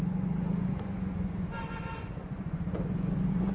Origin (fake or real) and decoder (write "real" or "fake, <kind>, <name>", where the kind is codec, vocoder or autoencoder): fake, vocoder, Vocos